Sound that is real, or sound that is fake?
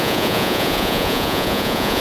fake